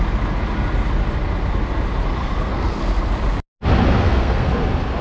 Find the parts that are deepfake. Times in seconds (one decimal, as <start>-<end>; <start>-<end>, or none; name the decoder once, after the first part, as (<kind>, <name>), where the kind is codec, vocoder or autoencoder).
2.2-2.8 (codec, SNAC); 4.0-4.5